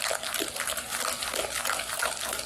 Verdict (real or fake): real